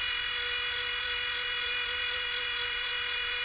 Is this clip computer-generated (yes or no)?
yes